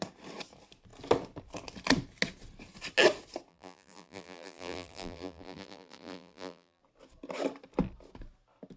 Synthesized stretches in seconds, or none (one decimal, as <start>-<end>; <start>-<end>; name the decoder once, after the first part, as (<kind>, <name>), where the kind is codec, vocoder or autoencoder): 3.5-6.8 (vocoder, BigVGAN v2)